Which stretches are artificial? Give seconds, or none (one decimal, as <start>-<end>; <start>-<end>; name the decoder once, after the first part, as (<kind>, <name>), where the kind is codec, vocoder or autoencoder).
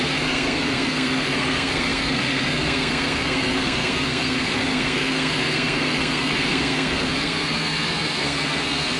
0.0-9.0 (codec, SNAC)